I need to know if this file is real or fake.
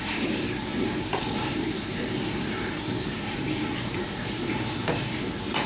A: fake